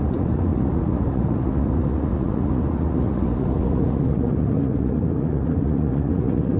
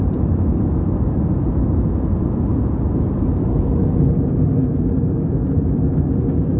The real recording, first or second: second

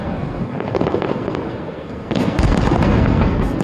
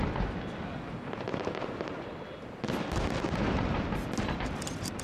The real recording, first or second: second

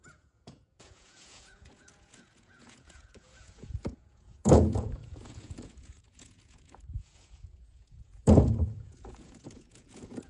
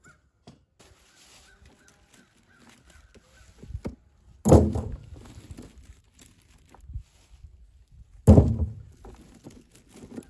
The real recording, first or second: second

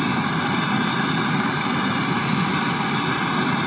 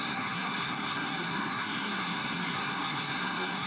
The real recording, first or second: first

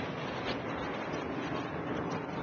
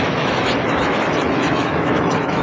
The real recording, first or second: first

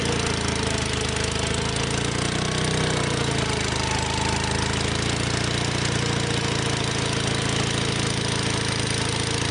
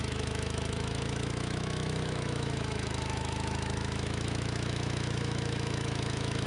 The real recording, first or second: first